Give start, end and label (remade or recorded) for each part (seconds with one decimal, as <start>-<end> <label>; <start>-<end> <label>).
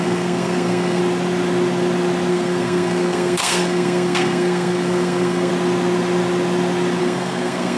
0.0-1.0 remade; 1.0-2.3 recorded; 2.3-5.5 remade; 5.5-7.0 recorded; 7.0-7.8 remade